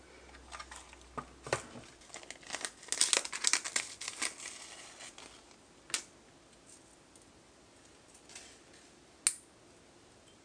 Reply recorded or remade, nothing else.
recorded